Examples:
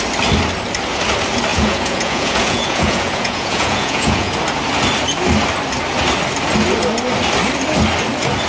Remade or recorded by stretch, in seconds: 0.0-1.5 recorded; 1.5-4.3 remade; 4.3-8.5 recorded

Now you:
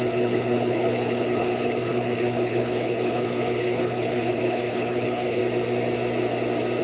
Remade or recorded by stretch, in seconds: 0.0-5.4 remade; 5.4-6.8 recorded

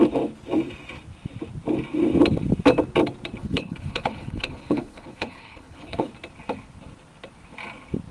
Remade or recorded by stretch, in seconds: 0.0-3.4 recorded; 3.4-6.1 remade; 6.1-8.1 recorded

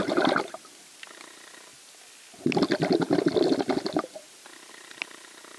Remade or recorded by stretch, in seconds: 0.0-5.6 recorded

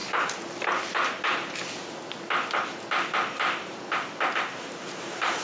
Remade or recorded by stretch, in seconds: 0.0-5.4 recorded

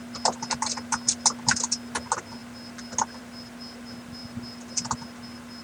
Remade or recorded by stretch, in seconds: 0.0-5.6 recorded